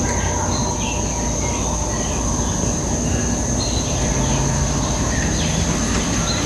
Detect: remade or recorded recorded